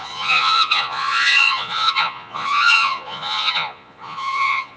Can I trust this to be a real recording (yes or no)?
no